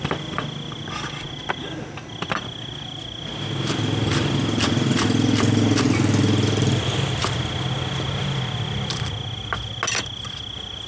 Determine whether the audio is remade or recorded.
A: recorded